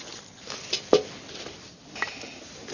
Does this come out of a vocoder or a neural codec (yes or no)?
no